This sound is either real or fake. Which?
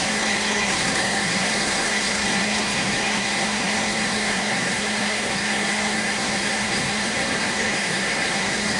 fake